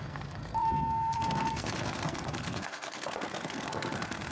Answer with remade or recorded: remade